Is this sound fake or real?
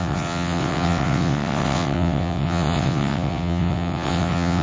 fake